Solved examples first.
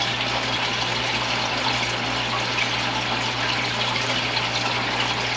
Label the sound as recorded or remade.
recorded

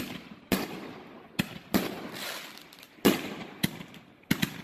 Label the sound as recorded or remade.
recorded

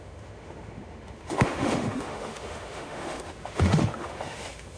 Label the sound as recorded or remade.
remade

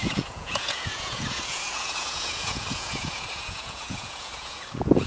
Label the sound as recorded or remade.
remade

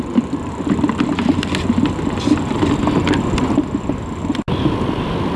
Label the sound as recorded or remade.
recorded